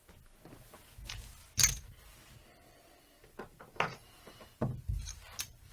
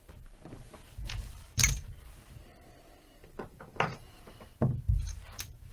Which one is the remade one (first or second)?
second